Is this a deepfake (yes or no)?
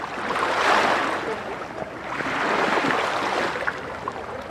no